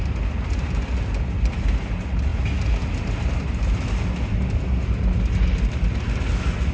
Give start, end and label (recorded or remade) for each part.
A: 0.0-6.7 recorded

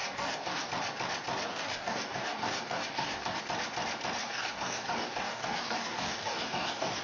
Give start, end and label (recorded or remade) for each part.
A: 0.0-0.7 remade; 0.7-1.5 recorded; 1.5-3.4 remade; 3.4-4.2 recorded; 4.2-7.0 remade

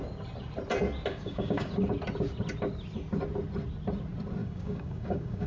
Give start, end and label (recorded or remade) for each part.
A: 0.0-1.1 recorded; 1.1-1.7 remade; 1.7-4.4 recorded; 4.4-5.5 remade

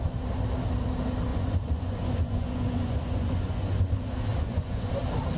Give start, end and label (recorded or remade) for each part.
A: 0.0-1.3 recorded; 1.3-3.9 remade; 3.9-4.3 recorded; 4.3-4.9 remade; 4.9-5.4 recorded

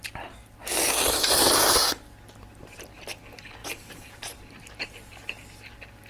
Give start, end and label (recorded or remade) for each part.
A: 0.0-3.6 recorded; 3.6-4.5 remade; 4.5-6.1 recorded

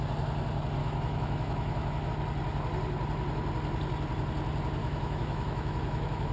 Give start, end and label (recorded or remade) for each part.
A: 0.0-0.8 recorded; 0.8-2.1 remade; 2.1-4.8 recorded; 4.8-6.3 remade

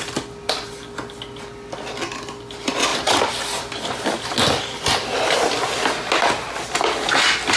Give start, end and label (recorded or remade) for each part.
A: 0.0-7.6 recorded